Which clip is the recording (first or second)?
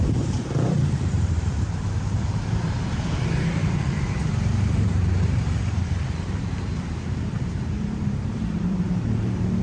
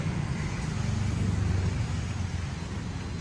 second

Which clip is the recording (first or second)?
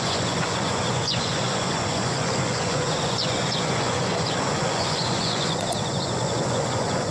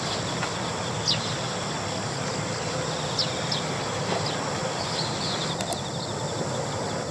second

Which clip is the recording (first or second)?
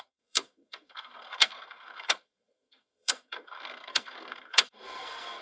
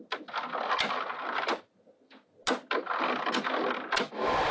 second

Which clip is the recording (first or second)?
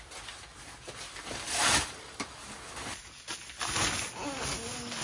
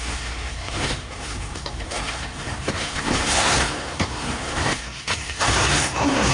first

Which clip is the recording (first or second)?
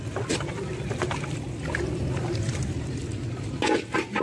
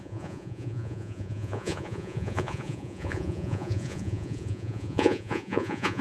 first